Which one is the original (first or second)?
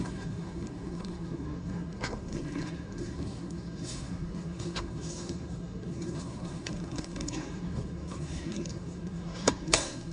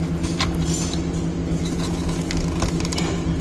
second